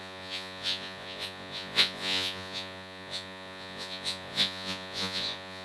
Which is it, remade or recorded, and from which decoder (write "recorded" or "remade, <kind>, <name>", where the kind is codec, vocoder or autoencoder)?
remade, vocoder, Vocos